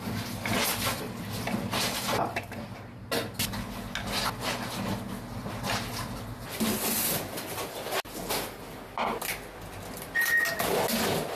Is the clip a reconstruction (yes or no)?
no